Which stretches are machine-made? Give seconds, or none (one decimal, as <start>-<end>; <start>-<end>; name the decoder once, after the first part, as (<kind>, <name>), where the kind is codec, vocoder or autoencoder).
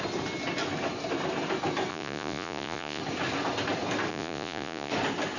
1.9-3.0 (vocoder, Vocos); 4.1-4.9